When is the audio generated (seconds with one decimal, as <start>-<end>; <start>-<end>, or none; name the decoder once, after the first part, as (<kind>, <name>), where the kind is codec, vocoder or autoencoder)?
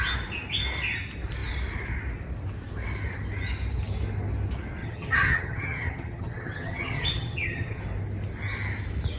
4.8-7.8 (vocoder, HiFi-GAN)